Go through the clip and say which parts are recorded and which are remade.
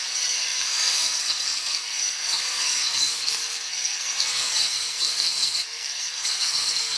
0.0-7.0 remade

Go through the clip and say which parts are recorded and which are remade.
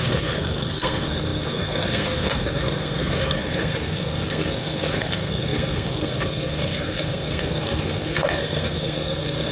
0.0-9.5 remade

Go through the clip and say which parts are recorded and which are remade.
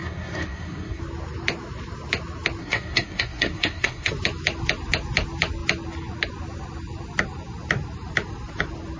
0.0-1.0 remade; 1.0-2.6 recorded; 2.6-4.1 remade; 4.1-9.0 recorded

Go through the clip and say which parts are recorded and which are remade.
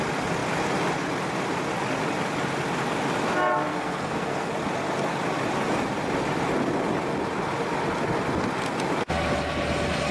0.0-3.7 recorded; 3.7-4.5 remade; 4.5-10.1 recorded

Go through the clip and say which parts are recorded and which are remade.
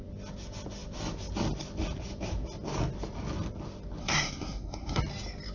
0.0-4.0 recorded; 4.0-5.0 remade; 5.0-5.5 recorded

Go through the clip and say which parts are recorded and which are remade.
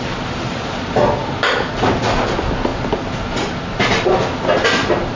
0.0-5.2 recorded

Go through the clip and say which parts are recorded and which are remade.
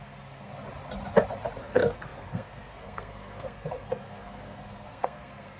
0.0-0.5 remade; 0.5-1.6 recorded; 1.6-5.6 remade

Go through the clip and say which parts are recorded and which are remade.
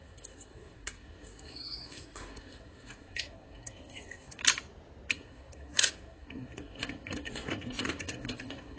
0.0-4.4 remade; 4.4-5.1 recorded; 5.1-8.8 remade